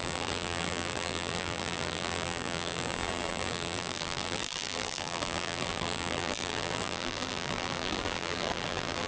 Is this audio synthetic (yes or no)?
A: yes